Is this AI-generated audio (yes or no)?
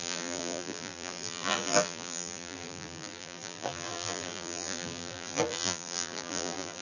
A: yes